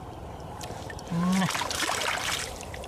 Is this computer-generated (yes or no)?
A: yes